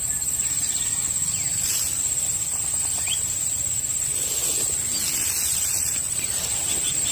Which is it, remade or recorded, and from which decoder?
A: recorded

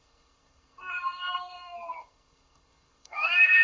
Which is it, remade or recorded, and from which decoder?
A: remade, codec, SNAC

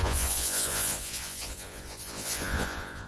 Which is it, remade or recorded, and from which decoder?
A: remade, vocoder, Vocos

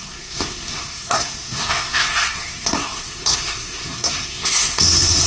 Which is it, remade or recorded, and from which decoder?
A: remade, codec, SNAC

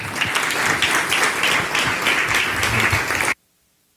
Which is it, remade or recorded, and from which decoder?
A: recorded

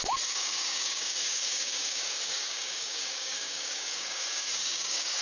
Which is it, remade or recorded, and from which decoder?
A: remade, codec, DAC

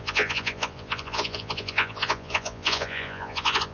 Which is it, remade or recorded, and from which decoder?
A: remade, vocoder, Vocos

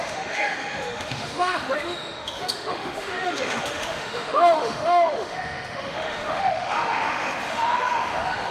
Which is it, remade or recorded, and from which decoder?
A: remade, autoencoder, DAC-VAE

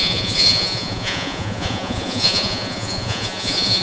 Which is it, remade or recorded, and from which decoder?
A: remade, vocoder, Vocos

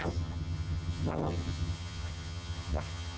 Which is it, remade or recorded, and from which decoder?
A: remade, vocoder, HiFi-GAN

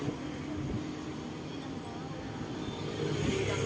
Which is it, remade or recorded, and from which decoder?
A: recorded